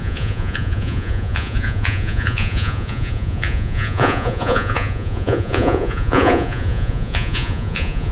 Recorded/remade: remade